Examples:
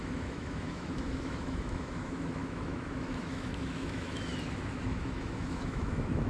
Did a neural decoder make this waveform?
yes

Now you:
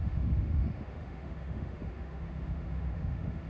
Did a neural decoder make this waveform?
yes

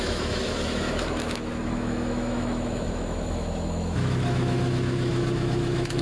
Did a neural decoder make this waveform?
yes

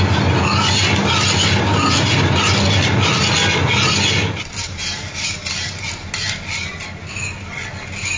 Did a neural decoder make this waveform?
no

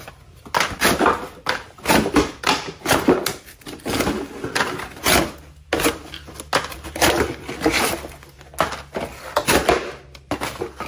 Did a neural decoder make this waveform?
no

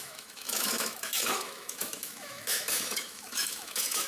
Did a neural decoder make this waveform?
yes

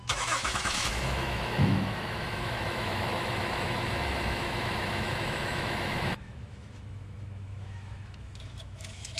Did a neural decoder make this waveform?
yes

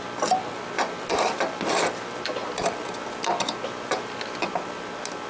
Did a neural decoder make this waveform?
no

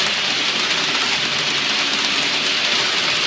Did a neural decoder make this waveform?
no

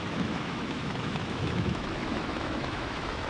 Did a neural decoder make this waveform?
yes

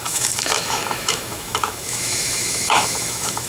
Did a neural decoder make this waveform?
yes